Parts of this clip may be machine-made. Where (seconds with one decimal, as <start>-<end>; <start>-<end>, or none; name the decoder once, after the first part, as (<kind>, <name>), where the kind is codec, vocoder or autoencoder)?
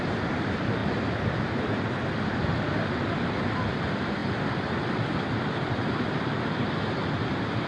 0.0-7.7 (vocoder, BigVGAN v2)